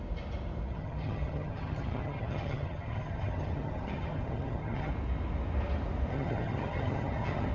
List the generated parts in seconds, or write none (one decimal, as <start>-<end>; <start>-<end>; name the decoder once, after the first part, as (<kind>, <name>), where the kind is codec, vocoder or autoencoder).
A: 0.7-4.9 (vocoder, HiFi-GAN); 6.1-7.5